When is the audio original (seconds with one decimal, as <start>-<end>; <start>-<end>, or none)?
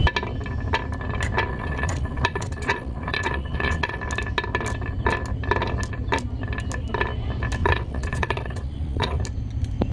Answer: 0.0-1.5; 4.0-7.6; 9.2-9.9